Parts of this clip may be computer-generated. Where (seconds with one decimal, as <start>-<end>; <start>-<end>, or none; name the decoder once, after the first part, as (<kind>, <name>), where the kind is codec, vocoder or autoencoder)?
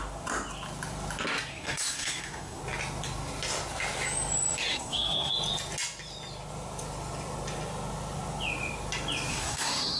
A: 1.5-2.6 (codec, SNAC); 4.7-5.3; 9.3-10.0